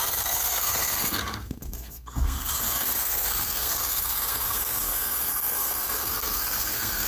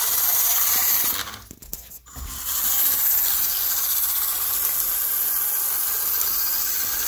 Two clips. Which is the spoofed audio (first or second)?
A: first